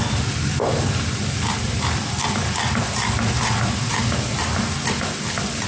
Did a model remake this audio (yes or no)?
no